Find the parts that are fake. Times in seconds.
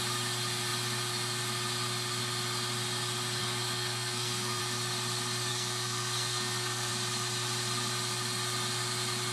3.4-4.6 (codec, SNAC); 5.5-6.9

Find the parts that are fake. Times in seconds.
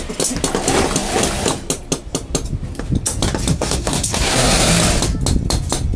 3.5-4.7 (codec, SNAC)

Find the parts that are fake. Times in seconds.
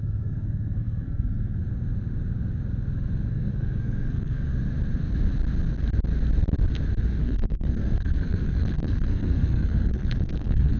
0.0-1.6 (codec, SNAC); 3.3-4.5; 7.2-10.8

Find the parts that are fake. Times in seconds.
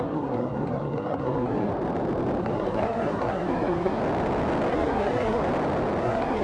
0.0-1.7 (codec, SNAC); 2.4-4.0; 4.7-5.4; 6.0-6.4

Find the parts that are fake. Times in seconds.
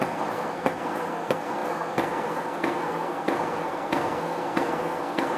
0.0-5.4 (codec, SNAC)